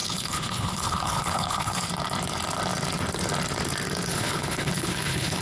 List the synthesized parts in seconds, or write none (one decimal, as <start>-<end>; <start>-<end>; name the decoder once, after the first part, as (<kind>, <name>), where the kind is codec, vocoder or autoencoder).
0.0-1.9 (codec, HILCodec); 4.1-5.4